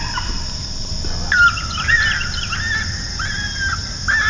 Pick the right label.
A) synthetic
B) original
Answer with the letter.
B